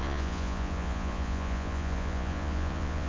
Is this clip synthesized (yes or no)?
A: yes